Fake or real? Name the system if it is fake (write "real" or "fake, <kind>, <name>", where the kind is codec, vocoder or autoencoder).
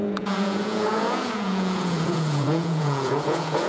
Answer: fake, vocoder, Vocos